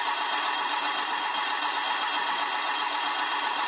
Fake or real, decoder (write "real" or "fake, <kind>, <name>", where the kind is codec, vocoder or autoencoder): real